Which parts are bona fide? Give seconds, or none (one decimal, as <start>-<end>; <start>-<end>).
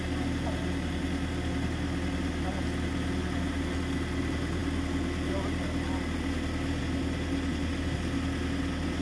0.0-9.0